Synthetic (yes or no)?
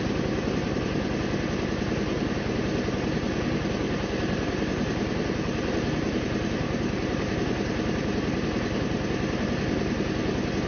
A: no